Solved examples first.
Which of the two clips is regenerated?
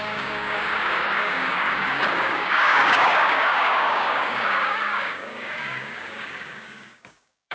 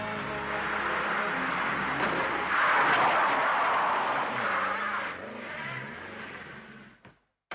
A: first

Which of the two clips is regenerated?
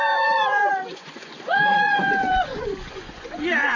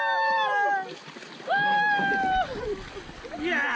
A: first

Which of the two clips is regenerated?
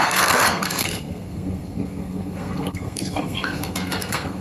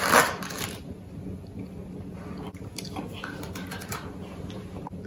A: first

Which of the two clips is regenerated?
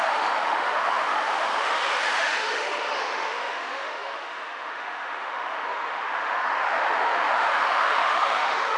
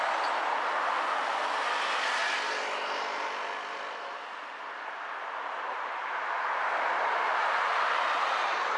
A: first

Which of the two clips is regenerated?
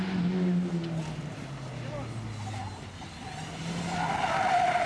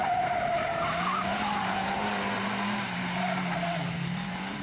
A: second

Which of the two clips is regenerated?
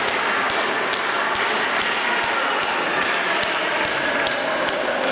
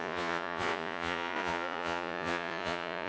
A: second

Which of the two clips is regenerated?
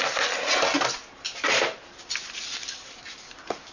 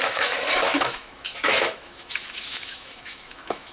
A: second